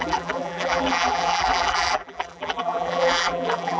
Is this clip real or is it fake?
fake